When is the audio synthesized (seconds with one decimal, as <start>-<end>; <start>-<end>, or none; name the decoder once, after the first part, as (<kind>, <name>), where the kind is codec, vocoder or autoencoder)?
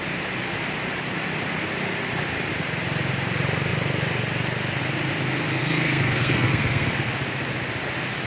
5.6-7.1 (codec, SNAC)